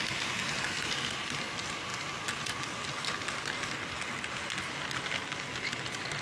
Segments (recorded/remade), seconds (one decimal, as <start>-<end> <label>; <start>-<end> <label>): 0.0-6.2 recorded